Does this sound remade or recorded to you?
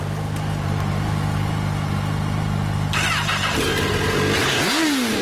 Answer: recorded